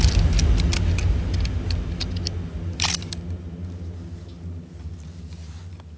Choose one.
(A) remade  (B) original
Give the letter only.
B